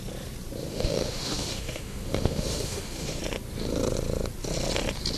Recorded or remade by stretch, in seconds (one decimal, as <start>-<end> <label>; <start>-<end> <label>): 0.0-0.7 recorded; 0.7-3.2 remade; 3.2-5.2 recorded